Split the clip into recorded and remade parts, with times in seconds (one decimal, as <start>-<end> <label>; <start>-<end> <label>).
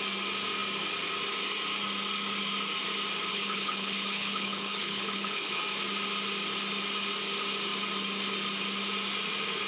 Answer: 0.0-3.3 recorded; 3.3-5.6 remade; 5.6-9.7 recorded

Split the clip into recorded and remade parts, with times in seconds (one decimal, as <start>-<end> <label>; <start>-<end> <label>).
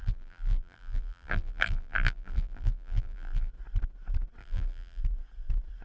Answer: 0.0-3.5 remade; 3.5-4.4 recorded; 4.4-5.0 remade; 5.0-5.8 recorded